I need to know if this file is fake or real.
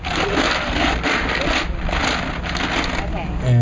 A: real